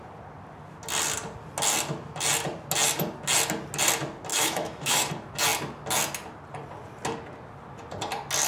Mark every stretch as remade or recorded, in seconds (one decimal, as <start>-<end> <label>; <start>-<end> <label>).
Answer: 0.0-4.3 recorded; 4.3-5.1 remade; 5.1-8.5 recorded